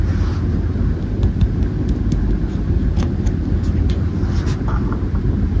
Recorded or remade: recorded